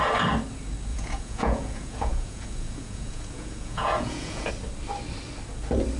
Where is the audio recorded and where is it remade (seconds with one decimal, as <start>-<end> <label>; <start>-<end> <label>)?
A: 0.0-0.9 recorded; 0.9-4.5 remade; 4.5-6.0 recorded